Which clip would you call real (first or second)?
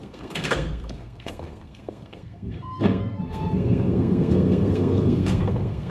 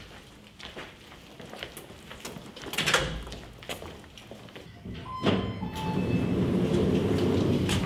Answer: second